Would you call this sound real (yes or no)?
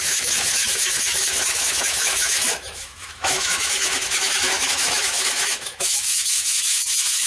no